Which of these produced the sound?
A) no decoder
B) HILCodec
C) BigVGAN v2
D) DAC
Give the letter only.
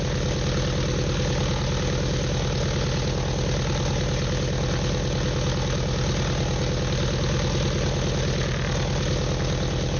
A